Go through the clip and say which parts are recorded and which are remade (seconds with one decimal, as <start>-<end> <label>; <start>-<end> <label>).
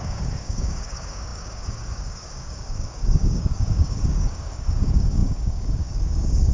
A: 0.0-6.5 remade